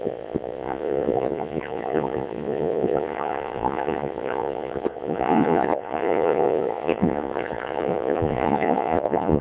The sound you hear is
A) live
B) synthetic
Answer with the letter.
B